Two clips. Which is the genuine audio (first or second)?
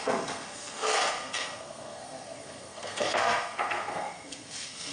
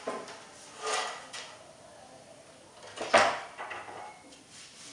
second